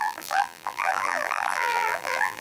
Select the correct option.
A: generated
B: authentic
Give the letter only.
A